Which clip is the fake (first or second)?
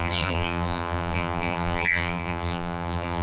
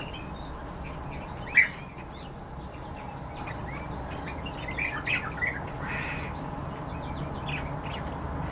first